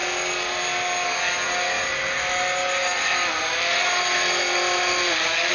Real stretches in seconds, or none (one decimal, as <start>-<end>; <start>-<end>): 0.0-5.5